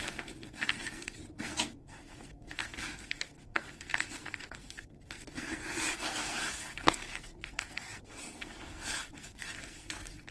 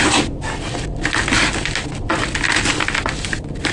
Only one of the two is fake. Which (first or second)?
first